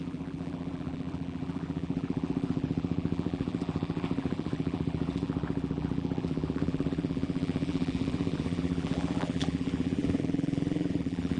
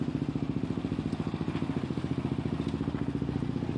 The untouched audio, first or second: second